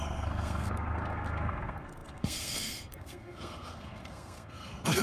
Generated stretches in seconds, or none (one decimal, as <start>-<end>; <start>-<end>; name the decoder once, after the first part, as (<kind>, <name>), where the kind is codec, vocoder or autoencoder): 0.0-5.0 (codec, SNAC)